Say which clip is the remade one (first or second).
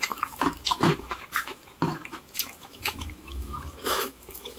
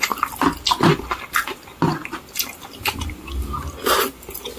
first